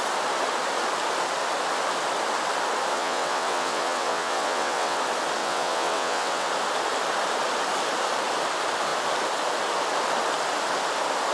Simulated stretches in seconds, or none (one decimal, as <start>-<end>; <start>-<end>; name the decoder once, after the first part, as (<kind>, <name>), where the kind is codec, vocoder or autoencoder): 2.9-5.0 (vocoder, WaveNeXt); 5.4-6.5